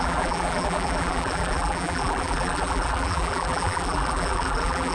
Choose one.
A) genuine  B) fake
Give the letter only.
B